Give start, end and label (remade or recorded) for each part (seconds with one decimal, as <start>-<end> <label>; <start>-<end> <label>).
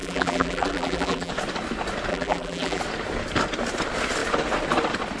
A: 0.0-1.3 remade; 1.3-2.1 recorded; 2.1-2.8 remade; 2.8-5.2 recorded